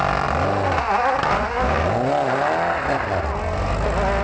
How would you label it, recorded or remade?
recorded